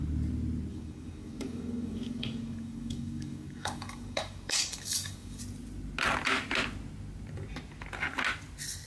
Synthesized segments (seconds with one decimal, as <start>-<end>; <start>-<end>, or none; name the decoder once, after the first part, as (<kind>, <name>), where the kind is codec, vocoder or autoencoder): 0.7-5.4 (codec, DAC)